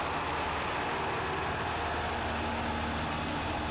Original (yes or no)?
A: yes